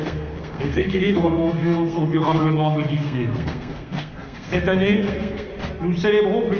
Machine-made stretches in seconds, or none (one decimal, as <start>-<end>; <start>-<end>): 0.0-5.5